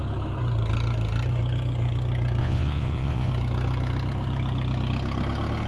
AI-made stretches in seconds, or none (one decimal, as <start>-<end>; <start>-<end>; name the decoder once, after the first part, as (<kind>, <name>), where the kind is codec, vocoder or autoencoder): 2.4-3.3 (vocoder, Vocos)